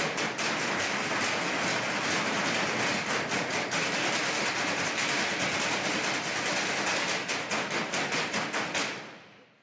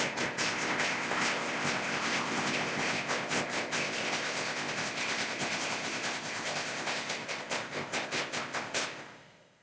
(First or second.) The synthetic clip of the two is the second